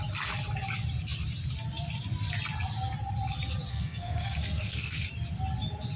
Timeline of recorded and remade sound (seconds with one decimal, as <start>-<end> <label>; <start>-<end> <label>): 0.0-3.7 recorded; 3.7-5.0 remade; 5.0-6.0 recorded